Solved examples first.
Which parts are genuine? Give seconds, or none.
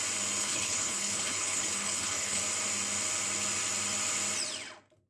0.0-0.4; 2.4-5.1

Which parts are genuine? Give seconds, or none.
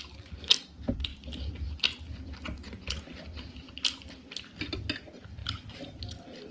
0.0-6.5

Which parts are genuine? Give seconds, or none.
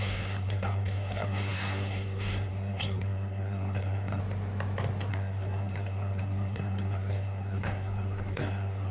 4.2-5.1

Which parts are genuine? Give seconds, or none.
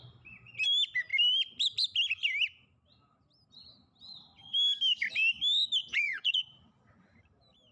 0.0-5.8; 6.4-7.7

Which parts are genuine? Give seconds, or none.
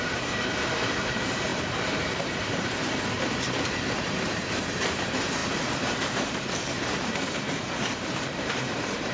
1.5-4.4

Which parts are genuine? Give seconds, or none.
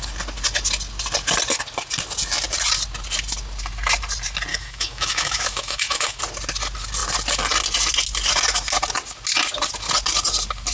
0.0-4.5; 6.2-10.7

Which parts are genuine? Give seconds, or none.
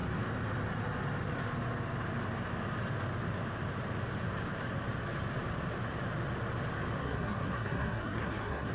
0.0-7.0